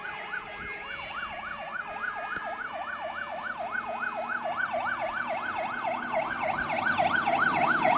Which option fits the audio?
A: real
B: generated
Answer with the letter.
A